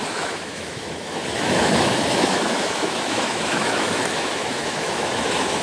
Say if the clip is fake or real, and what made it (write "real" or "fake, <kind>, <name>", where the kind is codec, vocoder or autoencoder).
fake, autoencoder, DAC-VAE